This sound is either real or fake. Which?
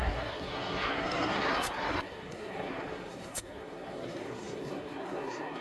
fake